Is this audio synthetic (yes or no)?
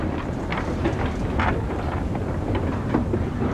no